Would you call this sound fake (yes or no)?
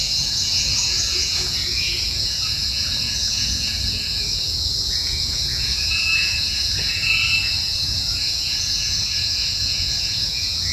yes